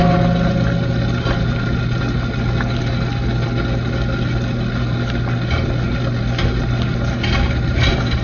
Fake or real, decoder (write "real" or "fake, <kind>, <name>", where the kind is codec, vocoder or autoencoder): real